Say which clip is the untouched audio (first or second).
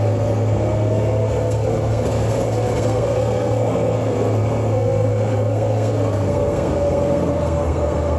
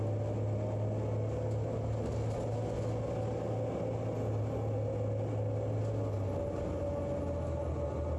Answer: second